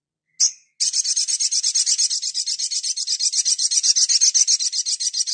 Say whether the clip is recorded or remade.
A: recorded